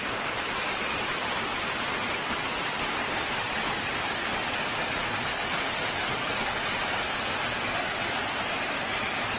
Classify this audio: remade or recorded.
recorded